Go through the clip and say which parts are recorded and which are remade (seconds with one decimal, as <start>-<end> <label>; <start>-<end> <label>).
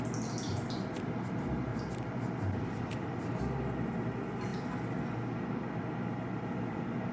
0.0-1.7 recorded; 1.7-3.4 remade; 3.4-7.1 recorded